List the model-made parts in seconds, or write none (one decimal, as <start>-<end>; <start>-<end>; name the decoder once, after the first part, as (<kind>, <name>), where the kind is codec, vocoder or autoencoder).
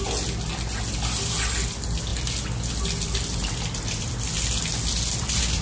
none